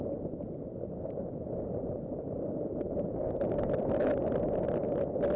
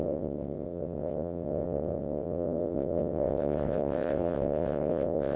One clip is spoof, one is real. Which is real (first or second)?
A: first